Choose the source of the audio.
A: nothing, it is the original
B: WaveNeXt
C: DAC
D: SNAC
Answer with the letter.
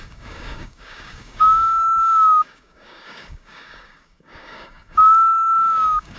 C